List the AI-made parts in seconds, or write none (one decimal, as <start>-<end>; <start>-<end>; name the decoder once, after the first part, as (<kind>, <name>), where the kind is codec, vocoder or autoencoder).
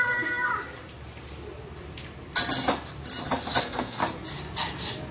0.0-0.5 (codec, SNAC); 3.6-4.0